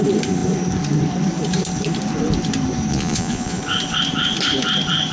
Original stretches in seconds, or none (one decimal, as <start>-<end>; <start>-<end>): 0.0-2.9; 3.6-5.1